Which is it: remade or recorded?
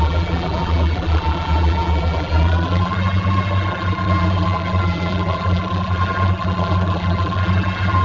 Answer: remade